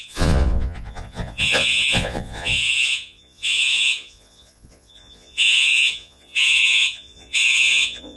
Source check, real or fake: fake